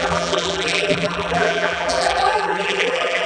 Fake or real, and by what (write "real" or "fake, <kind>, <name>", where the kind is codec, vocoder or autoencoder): fake, vocoder, BigVGAN v2